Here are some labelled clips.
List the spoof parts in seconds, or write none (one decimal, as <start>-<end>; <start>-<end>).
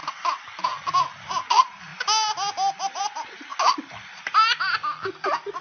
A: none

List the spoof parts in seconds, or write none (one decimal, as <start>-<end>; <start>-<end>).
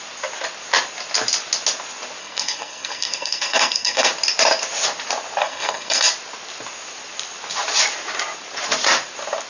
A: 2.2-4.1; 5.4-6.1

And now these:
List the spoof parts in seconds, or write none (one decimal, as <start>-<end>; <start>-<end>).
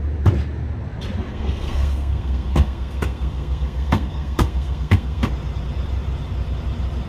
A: 1.3-5.3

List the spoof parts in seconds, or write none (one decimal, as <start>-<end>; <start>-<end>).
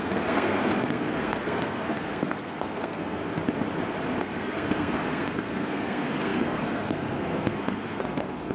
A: 0.0-3.2; 4.2-8.5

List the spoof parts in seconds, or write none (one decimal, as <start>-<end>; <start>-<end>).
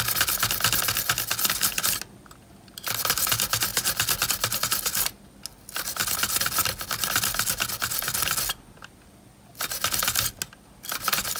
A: none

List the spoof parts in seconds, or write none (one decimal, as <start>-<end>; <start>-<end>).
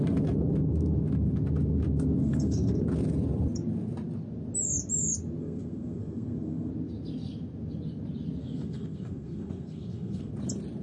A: 2.2-2.8; 5.4-6.7; 8.4-10.3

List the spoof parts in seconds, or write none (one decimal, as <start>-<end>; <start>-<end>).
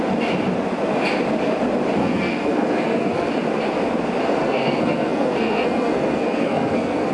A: 2.0-3.3; 4.4-7.1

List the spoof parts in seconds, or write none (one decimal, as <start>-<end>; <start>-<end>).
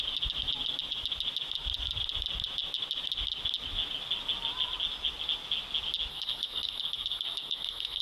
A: 6.1-8.0